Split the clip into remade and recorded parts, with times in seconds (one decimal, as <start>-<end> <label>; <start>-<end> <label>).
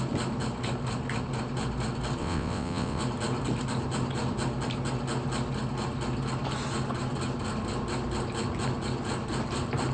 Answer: 0.0-2.2 recorded; 2.2-3.0 remade; 3.0-9.9 recorded